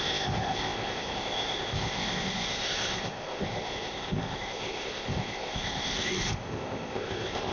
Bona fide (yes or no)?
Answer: no